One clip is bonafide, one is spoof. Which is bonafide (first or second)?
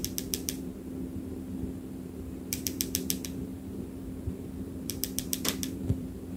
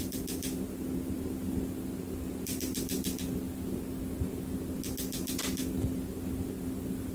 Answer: second